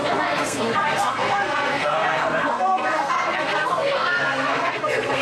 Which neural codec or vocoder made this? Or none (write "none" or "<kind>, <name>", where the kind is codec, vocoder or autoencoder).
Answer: codec, SNAC